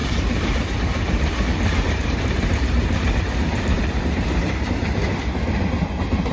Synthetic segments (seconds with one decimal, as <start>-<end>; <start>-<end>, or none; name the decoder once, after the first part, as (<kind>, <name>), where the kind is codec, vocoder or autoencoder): 0.0-5.0 (vocoder, BigVGAN v2)

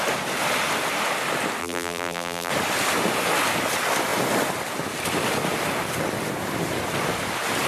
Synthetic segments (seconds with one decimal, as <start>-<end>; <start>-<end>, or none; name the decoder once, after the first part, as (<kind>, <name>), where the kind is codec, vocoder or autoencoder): 1.6-2.5 (vocoder, BigVGAN v2)

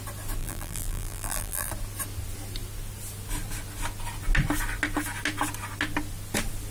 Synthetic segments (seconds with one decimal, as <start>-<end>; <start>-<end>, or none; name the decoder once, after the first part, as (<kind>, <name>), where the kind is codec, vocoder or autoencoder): 0.4-1.7 (vocoder, BigVGAN v2)